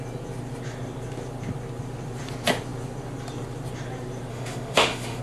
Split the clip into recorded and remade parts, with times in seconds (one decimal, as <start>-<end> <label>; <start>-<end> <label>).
0.0-4.3 recorded; 4.3-5.2 remade